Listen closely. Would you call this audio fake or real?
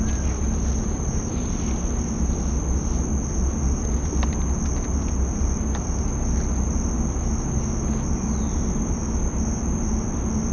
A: real